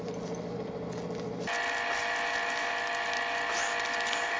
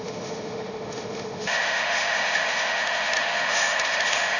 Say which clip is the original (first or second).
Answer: first